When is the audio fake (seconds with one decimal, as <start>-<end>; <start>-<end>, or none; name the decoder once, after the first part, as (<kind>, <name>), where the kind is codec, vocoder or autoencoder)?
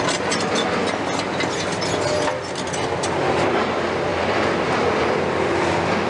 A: 4.1-5.5 (vocoder, BigVGAN v2)